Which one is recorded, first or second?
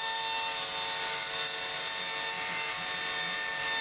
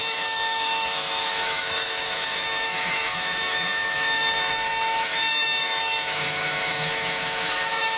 first